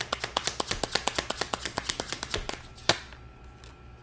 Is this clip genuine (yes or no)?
yes